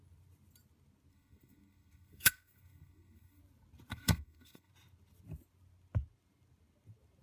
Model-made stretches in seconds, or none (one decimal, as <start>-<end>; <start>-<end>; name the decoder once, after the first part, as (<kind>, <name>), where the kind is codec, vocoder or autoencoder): 1.1-3.4 (codec, SNAC); 3.9-4.7